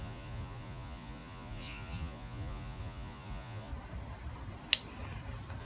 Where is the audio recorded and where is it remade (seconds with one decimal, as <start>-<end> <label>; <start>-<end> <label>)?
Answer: 0.0-3.7 remade; 3.7-5.6 recorded